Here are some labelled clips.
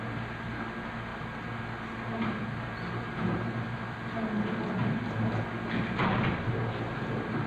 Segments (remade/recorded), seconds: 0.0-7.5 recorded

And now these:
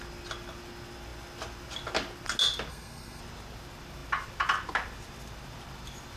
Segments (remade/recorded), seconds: 0.0-2.7 recorded; 2.7-3.2 remade; 3.2-6.2 recorded

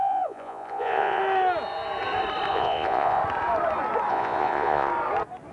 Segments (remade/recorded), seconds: 0.0-1.2 remade; 1.2-2.5 recorded; 2.5-3.2 remade; 3.2-4.1 recorded; 4.1-4.9 remade; 4.9-5.5 recorded

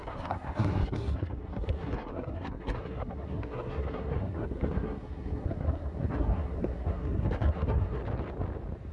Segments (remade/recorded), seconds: 0.0-8.0 remade; 8.0-8.9 recorded

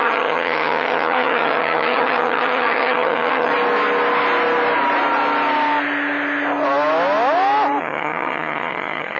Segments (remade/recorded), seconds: 0.0-3.5 remade; 3.5-7.8 recorded; 7.8-9.2 remade

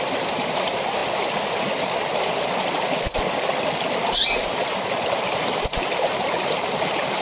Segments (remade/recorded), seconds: 0.0-1.0 remade; 1.0-5.3 recorded; 5.3-7.2 remade

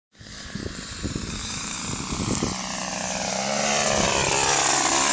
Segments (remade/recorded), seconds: 0.0-0.6 remade; 0.6-1.3 recorded; 1.3-1.8 remade; 1.8-5.1 recorded